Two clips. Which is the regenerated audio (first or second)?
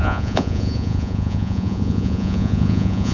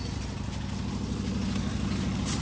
first